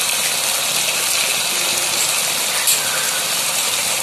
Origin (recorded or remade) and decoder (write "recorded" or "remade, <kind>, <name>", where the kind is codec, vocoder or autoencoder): recorded